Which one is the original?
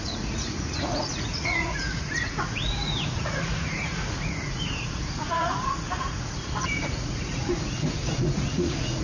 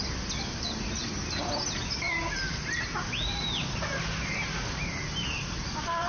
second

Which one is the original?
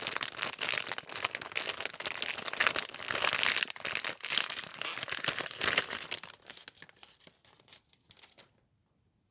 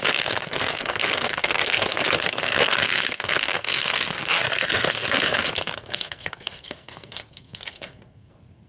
first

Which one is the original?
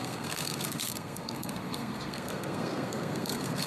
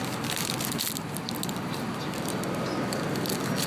second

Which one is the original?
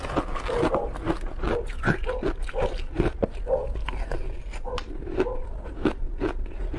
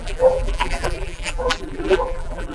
first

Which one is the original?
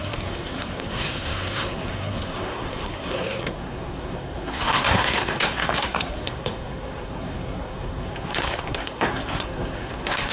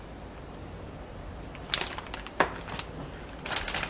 second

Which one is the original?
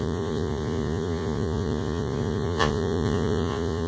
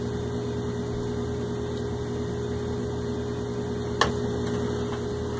second